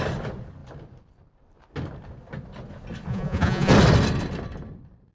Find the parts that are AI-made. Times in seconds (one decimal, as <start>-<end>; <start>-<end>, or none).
3.1-3.7